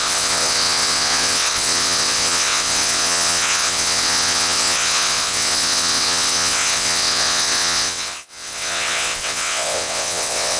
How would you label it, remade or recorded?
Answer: remade